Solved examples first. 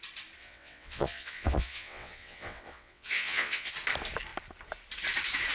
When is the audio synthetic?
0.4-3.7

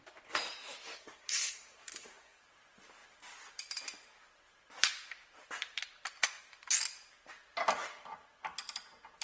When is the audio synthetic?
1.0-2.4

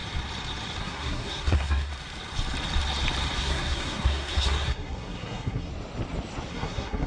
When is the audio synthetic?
0.8-1.9; 3.4-5.7; 6.5-7.1